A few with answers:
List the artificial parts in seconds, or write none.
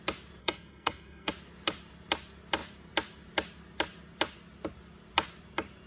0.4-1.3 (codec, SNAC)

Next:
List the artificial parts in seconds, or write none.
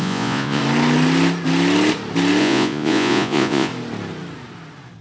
0.0-0.6 (vocoder, Vocos); 2.4-3.7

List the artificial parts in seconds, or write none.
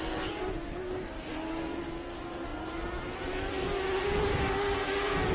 none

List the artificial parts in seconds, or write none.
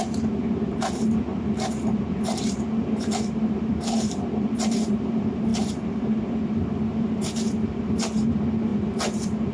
0.0-9.5 (vocoder, BigVGAN v2)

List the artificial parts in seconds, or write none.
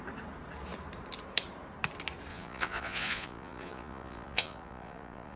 2.3-5.4 (vocoder, Vocos)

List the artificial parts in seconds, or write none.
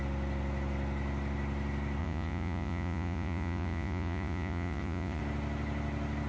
2.0-5.2 (vocoder, Vocos)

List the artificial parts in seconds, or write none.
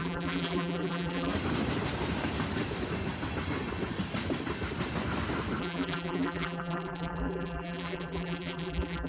0.0-1.3 (vocoder, BigVGAN v2); 5.6-9.1